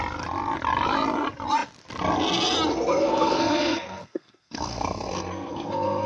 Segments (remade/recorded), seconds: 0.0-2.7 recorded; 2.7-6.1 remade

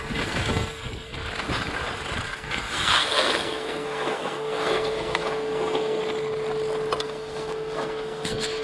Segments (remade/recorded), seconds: 0.0-1.2 remade; 1.2-2.2 recorded; 2.2-6.0 remade; 6.0-7.0 recorded; 7.0-8.6 remade

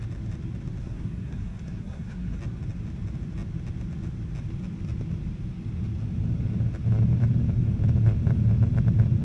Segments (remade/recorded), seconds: 0.0-0.8 recorded; 0.8-2.4 remade; 2.4-9.2 recorded

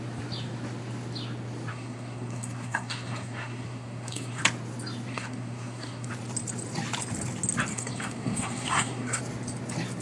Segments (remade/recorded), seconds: 0.0-1.7 recorded; 1.7-4.4 remade; 4.4-5.1 recorded; 5.1-6.1 remade; 6.1-7.7 recorded; 7.7-9.2 remade; 9.2-10.0 recorded

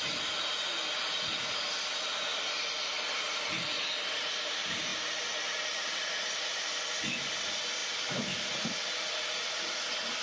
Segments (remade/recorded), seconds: 0.0-10.2 recorded